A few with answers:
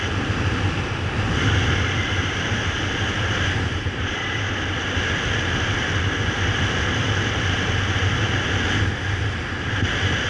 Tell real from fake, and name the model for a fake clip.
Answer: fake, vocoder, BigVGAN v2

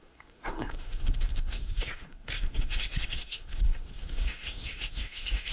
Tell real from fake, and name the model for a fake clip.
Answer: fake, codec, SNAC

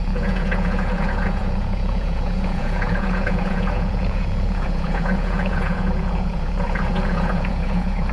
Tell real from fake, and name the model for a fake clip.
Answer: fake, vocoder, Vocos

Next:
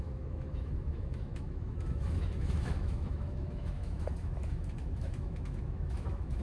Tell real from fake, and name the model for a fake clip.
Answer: fake, autoencoder, DAC-VAE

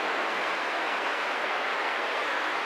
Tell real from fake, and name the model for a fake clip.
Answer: fake, codec, SNAC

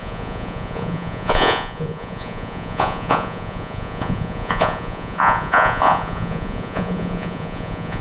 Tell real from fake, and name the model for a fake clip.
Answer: fake, vocoder, Vocos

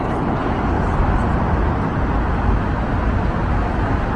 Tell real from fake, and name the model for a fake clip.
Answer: real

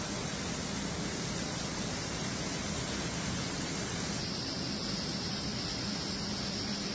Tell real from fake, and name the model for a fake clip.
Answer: real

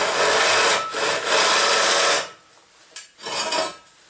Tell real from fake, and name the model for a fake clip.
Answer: real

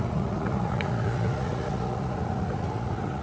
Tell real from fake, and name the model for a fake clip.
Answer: fake, vocoder, Vocos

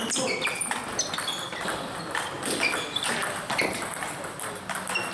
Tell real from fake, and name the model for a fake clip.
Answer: real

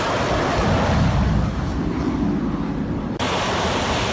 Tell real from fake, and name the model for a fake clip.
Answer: real